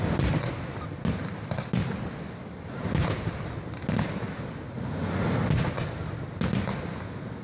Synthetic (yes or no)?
no